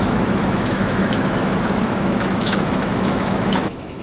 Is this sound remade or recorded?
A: remade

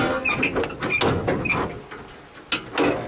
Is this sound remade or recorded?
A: recorded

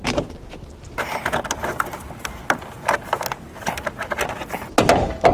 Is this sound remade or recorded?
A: recorded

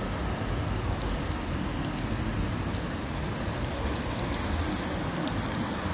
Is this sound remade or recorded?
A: recorded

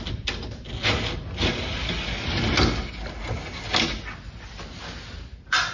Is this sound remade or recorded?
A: recorded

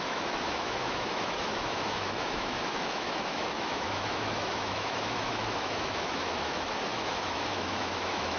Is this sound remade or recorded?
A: remade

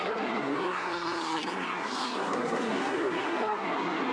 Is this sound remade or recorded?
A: remade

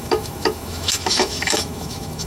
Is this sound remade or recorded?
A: remade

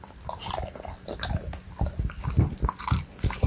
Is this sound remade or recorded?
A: remade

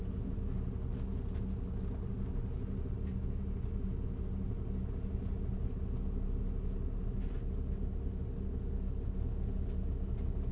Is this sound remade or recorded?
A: recorded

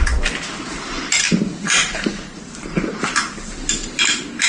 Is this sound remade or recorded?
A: recorded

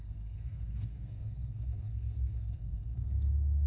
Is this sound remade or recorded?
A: remade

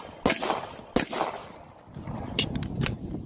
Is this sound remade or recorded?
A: recorded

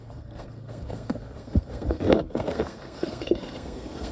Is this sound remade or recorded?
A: remade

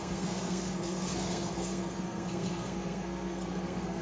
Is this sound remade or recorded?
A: remade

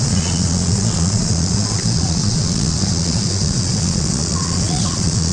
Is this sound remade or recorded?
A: remade